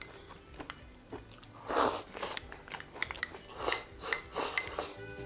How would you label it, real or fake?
real